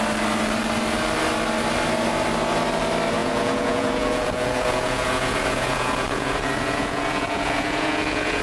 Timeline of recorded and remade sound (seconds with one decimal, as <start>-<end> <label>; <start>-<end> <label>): 0.0-3.2 recorded; 3.2-8.4 remade